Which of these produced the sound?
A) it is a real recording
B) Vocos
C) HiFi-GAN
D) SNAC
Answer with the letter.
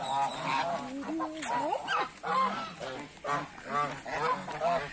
A